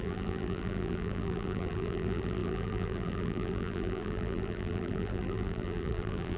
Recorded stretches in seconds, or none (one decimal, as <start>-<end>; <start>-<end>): none